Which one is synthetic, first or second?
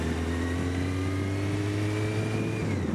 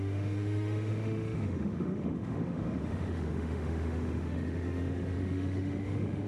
second